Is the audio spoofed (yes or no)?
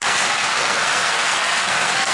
yes